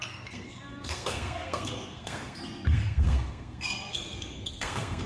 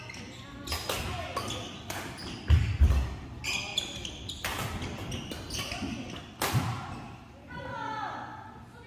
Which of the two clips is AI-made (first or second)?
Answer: first